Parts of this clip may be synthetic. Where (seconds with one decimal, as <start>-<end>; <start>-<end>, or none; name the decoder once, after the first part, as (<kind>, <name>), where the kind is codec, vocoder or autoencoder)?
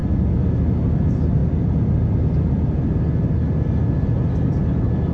none